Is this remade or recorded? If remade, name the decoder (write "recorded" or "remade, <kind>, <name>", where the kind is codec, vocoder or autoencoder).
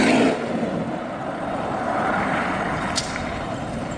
remade, vocoder, BigVGAN v2